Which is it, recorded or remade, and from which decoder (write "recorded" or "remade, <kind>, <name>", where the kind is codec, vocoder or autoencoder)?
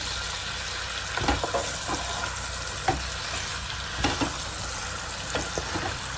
recorded